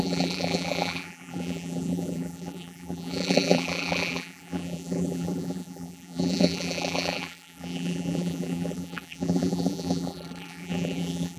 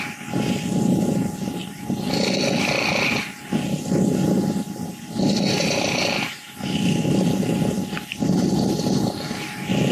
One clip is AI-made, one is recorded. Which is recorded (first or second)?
second